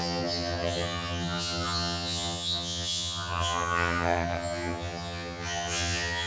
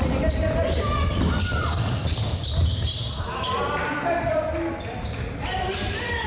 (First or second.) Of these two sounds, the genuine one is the second